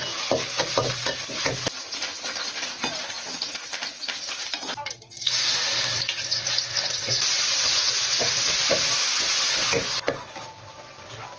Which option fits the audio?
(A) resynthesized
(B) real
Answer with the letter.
B